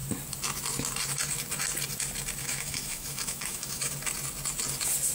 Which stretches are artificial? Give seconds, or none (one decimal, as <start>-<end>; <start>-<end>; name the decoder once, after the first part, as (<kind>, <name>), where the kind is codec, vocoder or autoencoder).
2.4-3.9 (autoencoder, DAC-VAE)